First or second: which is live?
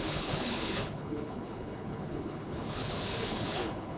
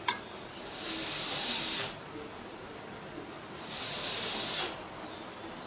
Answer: second